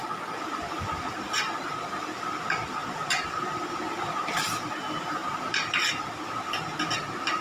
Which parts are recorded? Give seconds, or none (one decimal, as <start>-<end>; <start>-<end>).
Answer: 0.0-2.8; 4.3-7.4